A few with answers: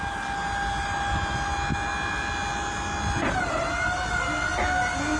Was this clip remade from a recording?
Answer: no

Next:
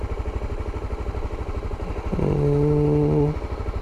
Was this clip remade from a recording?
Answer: no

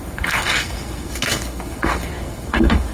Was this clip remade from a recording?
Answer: yes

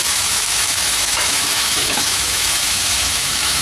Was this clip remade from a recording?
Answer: yes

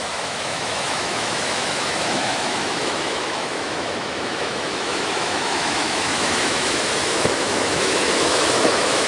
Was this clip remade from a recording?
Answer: yes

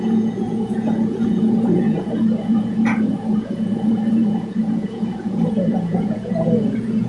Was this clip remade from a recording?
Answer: yes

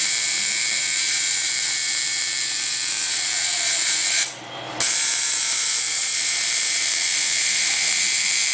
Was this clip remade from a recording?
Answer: yes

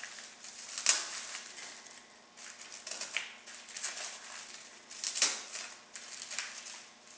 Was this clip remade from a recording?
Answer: no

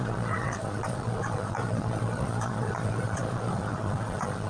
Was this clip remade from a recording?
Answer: yes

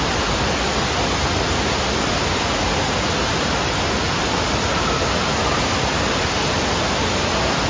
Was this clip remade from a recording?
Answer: no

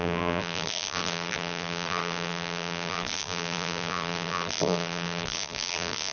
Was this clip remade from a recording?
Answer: yes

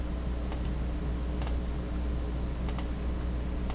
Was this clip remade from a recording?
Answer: no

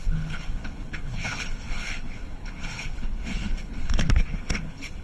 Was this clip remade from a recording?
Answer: yes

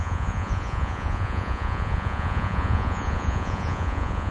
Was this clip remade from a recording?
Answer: yes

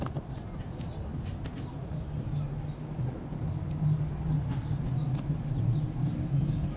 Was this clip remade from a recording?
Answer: no